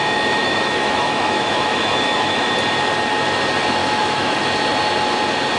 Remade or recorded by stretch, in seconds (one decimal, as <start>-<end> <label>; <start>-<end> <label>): 0.0-2.5 remade; 2.5-3.8 recorded; 3.8-4.4 remade; 4.4-5.6 recorded